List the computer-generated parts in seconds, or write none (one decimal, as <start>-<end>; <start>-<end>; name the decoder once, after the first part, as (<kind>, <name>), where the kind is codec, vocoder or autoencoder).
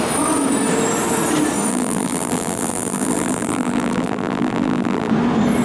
1.7-5.1 (vocoder, BigVGAN v2)